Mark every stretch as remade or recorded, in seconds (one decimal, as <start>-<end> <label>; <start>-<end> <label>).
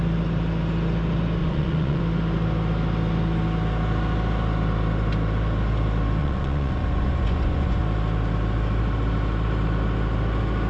0.0-1.4 recorded; 1.4-2.0 remade; 2.0-6.2 recorded; 6.2-7.8 remade; 7.8-10.7 recorded